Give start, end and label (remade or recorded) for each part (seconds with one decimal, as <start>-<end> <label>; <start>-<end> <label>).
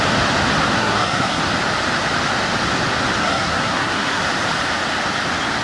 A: 0.0-0.8 recorded; 0.8-1.4 remade; 1.4-3.2 recorded; 3.2-4.2 remade; 4.2-5.6 recorded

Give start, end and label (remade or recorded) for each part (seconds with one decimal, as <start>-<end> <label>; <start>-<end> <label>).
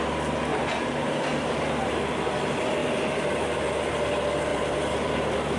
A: 0.0-0.5 recorded; 0.5-2.0 remade; 2.0-4.5 recorded; 4.5-5.6 remade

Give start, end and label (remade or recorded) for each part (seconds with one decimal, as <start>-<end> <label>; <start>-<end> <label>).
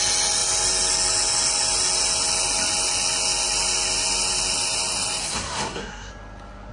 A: 0.0-5.2 recorded; 5.2-6.1 remade; 6.1-6.7 recorded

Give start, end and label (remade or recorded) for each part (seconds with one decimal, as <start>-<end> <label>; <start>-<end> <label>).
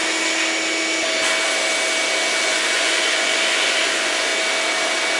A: 0.0-2.4 recorded; 2.4-4.3 remade; 4.3-5.2 recorded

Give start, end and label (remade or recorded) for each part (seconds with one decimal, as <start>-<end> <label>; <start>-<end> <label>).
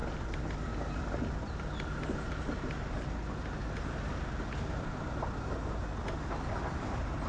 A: 0.0-7.3 recorded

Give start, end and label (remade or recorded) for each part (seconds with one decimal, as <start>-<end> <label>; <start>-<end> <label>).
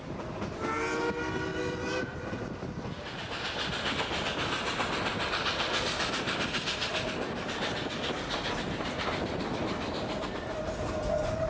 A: 0.0-11.5 recorded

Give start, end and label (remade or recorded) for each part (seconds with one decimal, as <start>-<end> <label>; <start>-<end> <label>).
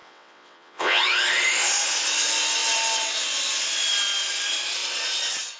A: 0.0-1.0 remade; 1.0-5.6 recorded